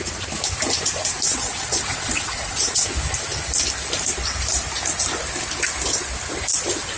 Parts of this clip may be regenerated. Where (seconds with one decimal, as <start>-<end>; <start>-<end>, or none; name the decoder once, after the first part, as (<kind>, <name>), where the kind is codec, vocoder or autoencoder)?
1.3-2.9 (vocoder, WaveNeXt)